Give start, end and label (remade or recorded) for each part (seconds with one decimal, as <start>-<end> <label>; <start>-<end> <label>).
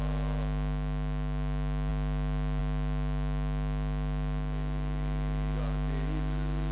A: 0.0-6.7 recorded